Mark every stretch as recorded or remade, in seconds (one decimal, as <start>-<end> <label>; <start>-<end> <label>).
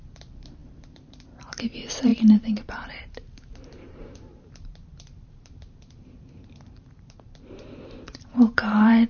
0.0-9.1 remade